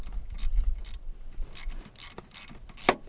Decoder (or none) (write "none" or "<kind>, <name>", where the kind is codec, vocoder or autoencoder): none